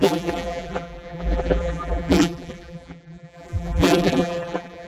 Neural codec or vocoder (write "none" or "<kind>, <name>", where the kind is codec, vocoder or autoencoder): vocoder, BigVGAN v2